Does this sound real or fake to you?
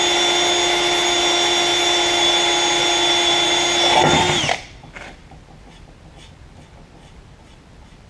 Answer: real